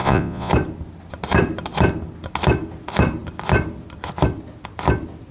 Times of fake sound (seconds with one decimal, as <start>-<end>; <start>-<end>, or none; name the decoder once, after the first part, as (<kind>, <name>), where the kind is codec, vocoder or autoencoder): 0.0-0.5 (vocoder, Vocos)